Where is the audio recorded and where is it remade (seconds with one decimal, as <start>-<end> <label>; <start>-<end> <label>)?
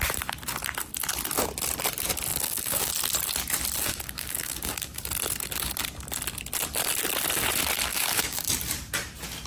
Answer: 0.0-2.3 recorded; 2.3-2.9 remade; 2.9-3.9 recorded; 3.9-5.1 remade; 5.1-7.9 recorded; 7.9-8.5 remade; 8.5-9.5 recorded